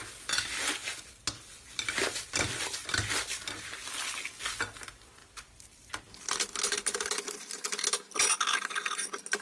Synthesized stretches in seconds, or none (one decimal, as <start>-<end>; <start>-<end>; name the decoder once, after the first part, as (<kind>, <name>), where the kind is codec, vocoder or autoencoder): 5.2-7.5 (vocoder, BigVGAN v2)